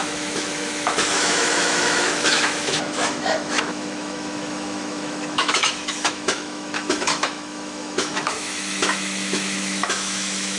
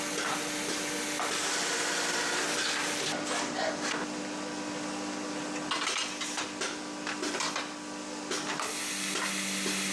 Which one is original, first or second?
second